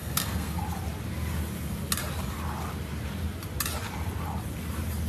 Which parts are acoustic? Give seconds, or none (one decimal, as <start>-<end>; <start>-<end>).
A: 0.6-5.1

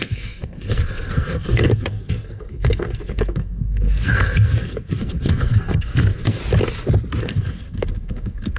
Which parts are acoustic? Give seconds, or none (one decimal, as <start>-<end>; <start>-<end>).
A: 6.4-7.2

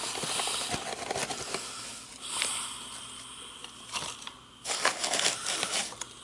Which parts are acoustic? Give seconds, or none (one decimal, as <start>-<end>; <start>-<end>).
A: 0.0-6.2

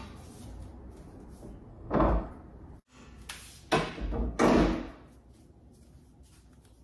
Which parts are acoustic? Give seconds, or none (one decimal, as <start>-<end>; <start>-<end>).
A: 0.0-1.7; 2.3-6.8

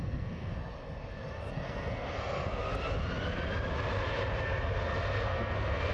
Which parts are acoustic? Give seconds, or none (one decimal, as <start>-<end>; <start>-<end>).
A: 0.5-1.5; 2.6-5.2

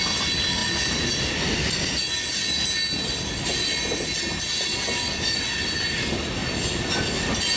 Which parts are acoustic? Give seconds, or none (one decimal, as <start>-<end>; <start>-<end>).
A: 0.0-7.6

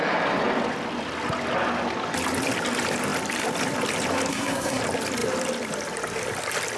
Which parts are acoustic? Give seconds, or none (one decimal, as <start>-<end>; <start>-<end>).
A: 0.0-4.3; 4.8-6.8

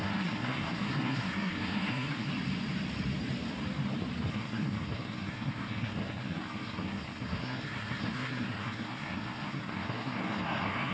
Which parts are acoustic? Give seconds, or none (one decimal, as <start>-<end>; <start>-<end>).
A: 2.3-4.3